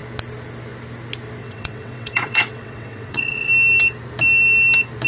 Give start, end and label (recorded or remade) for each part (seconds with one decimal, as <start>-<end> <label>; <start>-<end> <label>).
0.0-1.4 recorded; 1.4-3.5 remade; 3.5-5.1 recorded